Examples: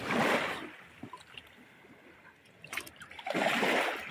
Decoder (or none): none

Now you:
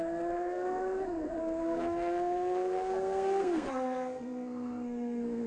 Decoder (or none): codec, SNAC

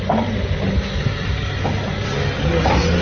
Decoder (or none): none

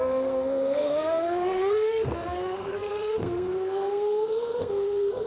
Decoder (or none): codec, SNAC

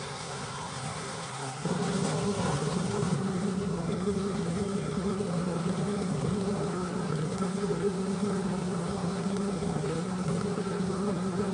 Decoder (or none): codec, SNAC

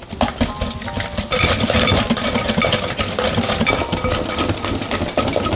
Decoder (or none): none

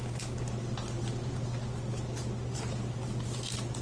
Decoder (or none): none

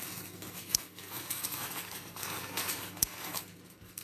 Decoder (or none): codec, SNAC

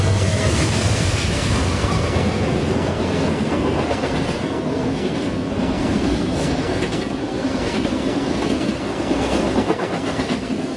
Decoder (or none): codec, SNAC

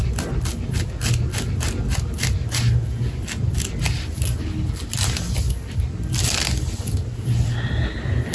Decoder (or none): none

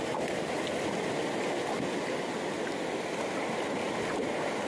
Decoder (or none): none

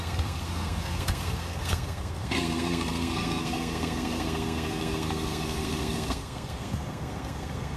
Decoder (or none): codec, SNAC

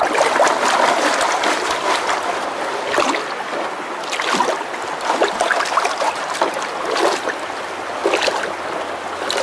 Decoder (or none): none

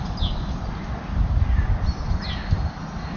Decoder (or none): none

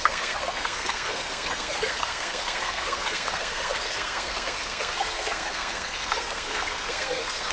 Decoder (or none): codec, SNAC